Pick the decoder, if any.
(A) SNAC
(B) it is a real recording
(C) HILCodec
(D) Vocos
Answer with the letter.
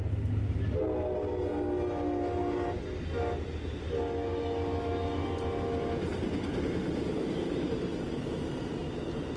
B